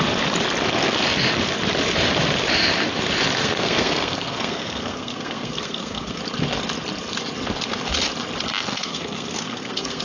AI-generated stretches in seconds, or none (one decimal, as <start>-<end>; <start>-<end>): 3.4-6.2; 8.7-10.0